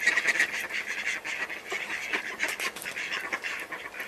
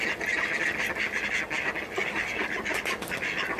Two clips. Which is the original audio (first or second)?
second